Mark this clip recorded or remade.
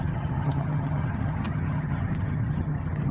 remade